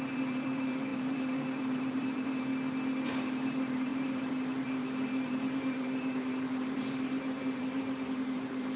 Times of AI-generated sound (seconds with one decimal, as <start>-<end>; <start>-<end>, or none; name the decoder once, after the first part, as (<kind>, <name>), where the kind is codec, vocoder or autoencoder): 0.0-2.5 (vocoder, BigVGAN v2); 3.0-8.8